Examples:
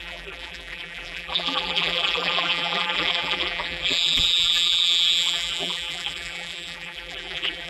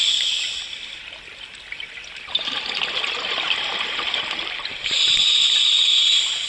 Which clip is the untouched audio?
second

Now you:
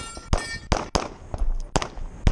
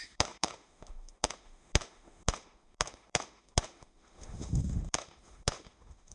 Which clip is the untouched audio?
first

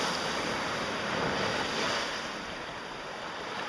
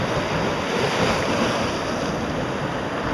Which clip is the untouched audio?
second